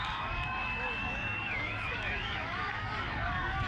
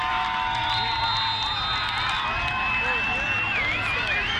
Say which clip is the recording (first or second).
second